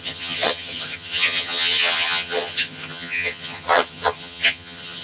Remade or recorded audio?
remade